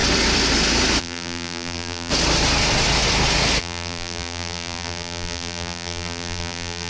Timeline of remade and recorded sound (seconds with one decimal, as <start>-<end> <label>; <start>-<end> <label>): 0.0-1.0 recorded; 1.0-2.1 remade; 2.1-3.6 recorded; 3.6-6.9 remade